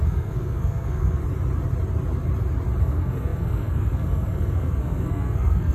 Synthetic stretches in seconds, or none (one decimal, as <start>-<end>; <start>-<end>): 0.0-1.2; 2.8-5.7